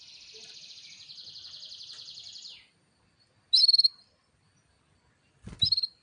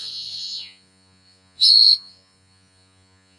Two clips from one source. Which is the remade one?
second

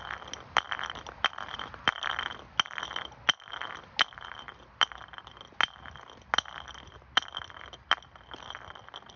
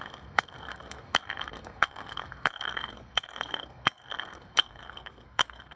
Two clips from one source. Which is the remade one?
second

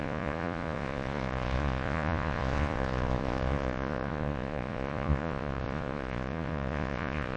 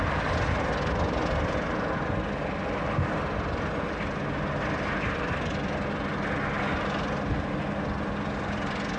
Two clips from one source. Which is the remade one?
first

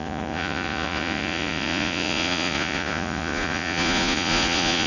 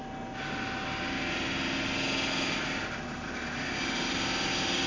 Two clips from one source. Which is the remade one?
first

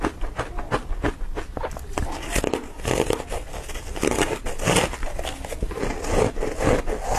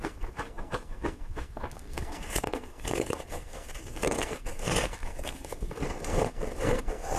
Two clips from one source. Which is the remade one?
second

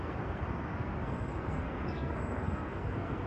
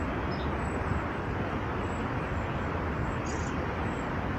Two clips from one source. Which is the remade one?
first